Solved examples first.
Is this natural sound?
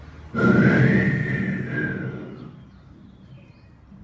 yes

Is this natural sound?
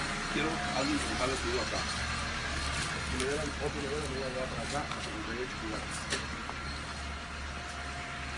yes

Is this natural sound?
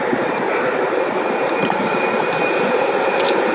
no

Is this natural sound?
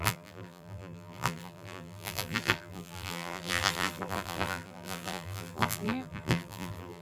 no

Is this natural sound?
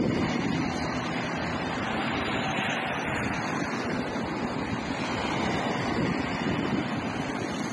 yes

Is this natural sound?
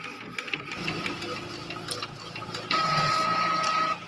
yes